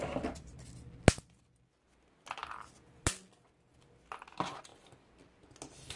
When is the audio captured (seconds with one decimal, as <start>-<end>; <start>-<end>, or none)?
0.0-6.0